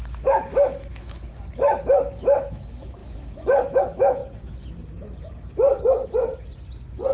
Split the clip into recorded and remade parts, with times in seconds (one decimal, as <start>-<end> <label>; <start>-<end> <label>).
0.0-4.2 remade; 4.2-7.1 recorded